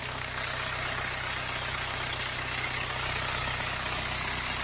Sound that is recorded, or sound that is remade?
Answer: remade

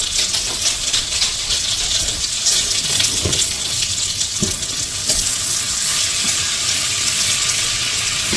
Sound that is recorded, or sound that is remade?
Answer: remade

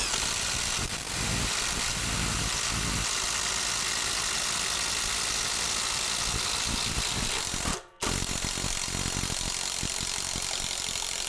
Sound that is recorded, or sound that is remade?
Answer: recorded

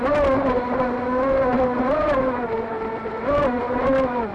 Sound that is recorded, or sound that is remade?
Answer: recorded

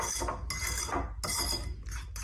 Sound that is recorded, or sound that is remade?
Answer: recorded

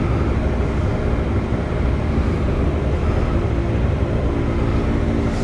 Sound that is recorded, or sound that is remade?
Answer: recorded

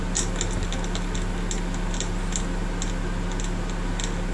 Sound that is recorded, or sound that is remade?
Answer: recorded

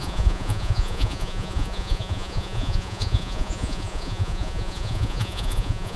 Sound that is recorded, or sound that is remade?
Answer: remade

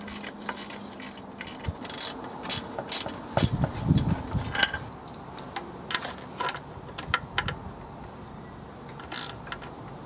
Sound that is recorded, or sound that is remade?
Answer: recorded